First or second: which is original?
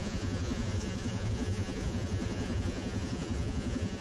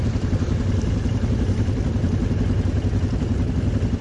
second